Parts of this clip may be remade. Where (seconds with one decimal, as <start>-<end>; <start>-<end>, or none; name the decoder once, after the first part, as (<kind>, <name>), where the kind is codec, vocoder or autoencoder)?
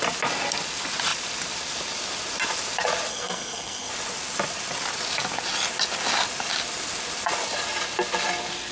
3.1-3.9 (codec, SNAC)